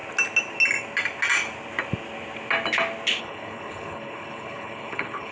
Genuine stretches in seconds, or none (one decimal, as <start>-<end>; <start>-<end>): 0.0-3.2